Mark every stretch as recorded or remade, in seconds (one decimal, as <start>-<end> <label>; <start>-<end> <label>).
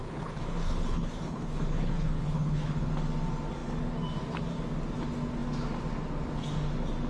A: 0.0-2.9 remade; 2.9-7.1 recorded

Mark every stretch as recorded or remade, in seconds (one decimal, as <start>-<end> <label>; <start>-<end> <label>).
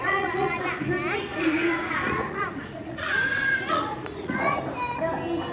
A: 0.0-0.6 remade; 0.6-1.3 recorded; 1.3-4.6 remade; 4.6-5.5 recorded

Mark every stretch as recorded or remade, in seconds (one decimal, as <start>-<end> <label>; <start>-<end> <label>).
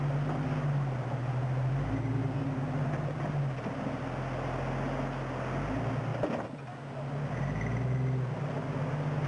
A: 0.0-9.3 recorded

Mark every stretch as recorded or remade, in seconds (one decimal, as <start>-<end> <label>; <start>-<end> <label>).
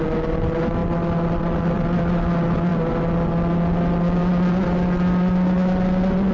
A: 0.0-6.3 recorded